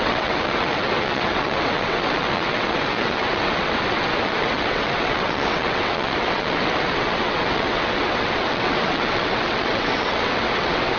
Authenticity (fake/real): fake